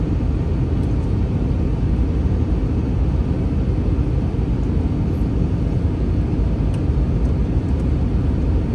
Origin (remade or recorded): recorded